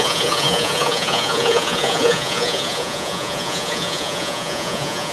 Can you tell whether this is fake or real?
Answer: fake